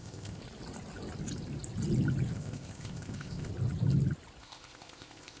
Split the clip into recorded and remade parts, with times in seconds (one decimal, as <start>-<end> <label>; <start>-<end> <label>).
0.0-0.4 remade; 0.4-2.3 recorded; 2.3-3.5 remade; 3.5-4.4 recorded; 4.4-5.4 remade